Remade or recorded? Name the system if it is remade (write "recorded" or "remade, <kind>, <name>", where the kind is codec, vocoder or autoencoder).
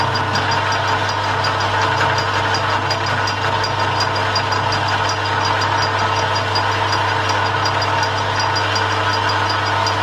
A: recorded